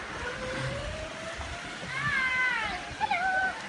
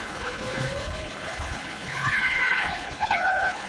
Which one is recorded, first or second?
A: first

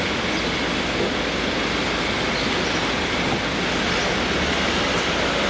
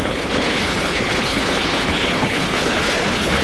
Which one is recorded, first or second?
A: first